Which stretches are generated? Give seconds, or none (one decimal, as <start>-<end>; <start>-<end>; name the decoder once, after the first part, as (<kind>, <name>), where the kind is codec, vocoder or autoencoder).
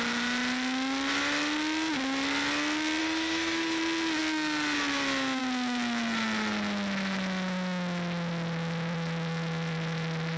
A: 3.0-3.8 (autoencoder, DAC-VAE)